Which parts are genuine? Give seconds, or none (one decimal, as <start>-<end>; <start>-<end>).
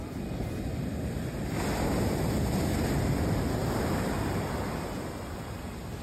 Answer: 0.0-6.0